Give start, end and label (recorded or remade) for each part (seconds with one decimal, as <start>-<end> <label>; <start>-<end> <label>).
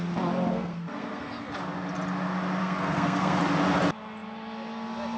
0.0-0.5 recorded; 0.5-1.3 remade; 1.3-2.6 recorded; 2.6-3.4 remade; 3.4-5.2 recorded